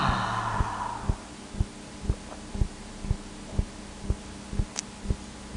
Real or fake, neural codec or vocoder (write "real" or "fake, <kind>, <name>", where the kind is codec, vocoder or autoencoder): real